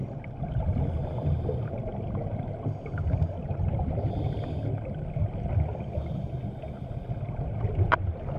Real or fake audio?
real